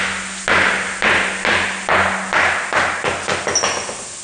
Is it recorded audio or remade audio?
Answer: recorded